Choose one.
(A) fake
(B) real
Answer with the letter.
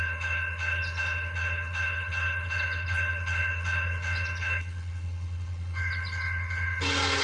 A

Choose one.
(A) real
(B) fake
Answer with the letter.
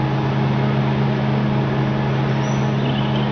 A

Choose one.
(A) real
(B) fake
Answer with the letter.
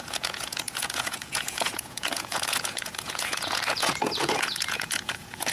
B